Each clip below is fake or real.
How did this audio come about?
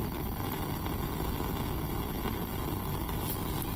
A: real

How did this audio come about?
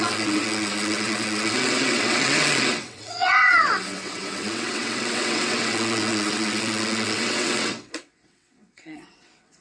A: fake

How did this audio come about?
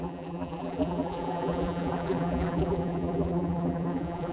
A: fake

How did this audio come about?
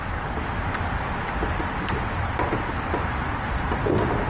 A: real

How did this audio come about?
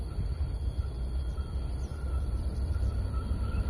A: real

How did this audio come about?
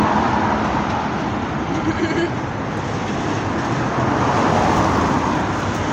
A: real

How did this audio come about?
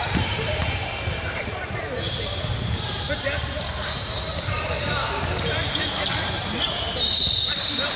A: fake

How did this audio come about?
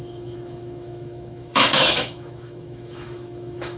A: fake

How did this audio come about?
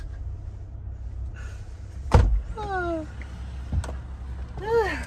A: real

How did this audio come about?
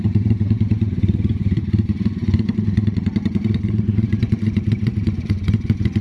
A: fake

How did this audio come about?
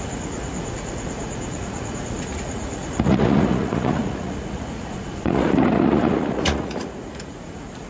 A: fake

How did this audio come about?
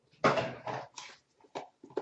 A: real